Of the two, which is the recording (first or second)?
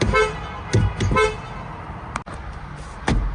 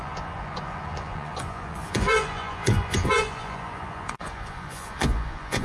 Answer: first